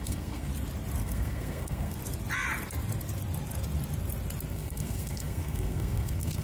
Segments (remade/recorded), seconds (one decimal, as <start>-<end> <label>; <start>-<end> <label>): 0.0-0.5 remade; 0.5-1.0 recorded; 1.0-2.0 remade; 2.0-4.5 recorded; 4.5-6.4 remade